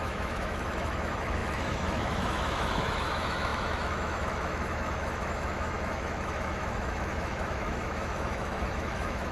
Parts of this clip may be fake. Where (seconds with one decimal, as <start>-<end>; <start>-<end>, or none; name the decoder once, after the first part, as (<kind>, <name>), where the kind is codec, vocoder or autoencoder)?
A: 0.0-9.3 (autoencoder, DAC-VAE)

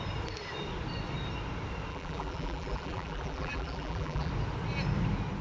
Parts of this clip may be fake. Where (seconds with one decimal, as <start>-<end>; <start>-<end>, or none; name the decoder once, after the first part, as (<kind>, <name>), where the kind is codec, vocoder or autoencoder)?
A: 1.9-4.3 (vocoder, BigVGAN v2)

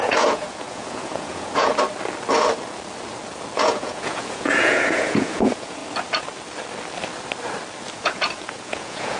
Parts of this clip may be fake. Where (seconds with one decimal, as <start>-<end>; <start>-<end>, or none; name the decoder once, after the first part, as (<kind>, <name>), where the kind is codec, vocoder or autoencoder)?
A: 0.0-1.7 (vocoder, Vocos); 3.6-5.8; 7.9-9.2

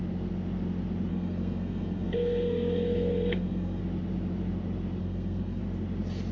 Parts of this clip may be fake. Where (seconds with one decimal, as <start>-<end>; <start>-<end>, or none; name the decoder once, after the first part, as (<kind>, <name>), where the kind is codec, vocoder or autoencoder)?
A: 1.1-3.8 (codec, SNAC); 5.0-5.6

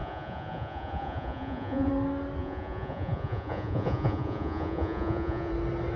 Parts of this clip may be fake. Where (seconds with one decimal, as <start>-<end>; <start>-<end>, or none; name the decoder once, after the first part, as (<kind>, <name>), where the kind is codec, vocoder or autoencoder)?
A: 0.0-1.9 (vocoder, Vocos); 2.4-5.5

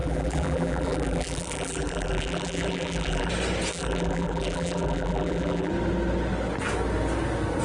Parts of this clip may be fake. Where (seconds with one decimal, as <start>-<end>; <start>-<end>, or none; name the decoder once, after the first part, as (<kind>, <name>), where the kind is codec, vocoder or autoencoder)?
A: 0.0-3.3 (vocoder, BigVGAN v2); 3.7-5.7